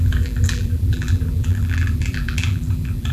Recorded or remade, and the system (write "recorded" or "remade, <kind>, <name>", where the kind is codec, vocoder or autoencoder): remade, vocoder, BigVGAN v2